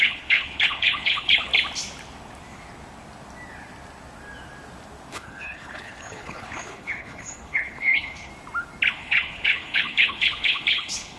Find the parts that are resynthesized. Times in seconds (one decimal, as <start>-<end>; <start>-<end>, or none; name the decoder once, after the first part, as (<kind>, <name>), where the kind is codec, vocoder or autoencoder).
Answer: 0.0-1.5 (codec, HILCodec); 5.1-8.3; 8.9-11.2